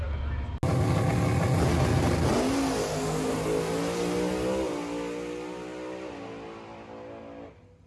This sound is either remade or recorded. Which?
recorded